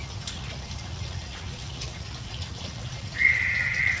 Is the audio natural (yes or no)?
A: no